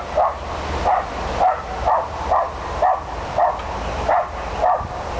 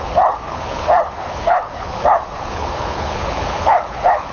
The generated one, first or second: second